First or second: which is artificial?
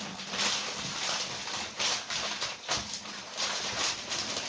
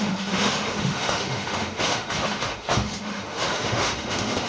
second